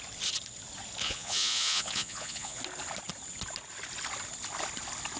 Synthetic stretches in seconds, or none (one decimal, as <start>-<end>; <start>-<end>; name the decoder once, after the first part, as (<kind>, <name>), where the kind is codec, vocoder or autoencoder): 1.0-2.6 (vocoder, Vocos)